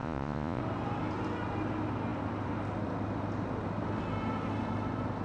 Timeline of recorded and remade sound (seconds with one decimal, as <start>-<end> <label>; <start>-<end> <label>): 0.0-0.6 remade; 0.6-5.2 recorded